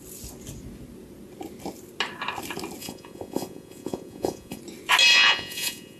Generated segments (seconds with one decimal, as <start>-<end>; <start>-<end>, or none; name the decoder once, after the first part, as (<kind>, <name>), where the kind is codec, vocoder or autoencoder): 2.8-4.6 (vocoder, Vocos); 5.1-6.0